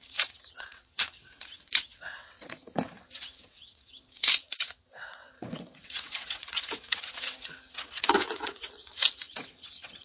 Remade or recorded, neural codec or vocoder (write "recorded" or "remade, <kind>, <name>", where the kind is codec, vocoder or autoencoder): remade, vocoder, WaveNeXt